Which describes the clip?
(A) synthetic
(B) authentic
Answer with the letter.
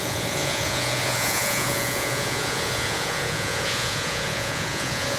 A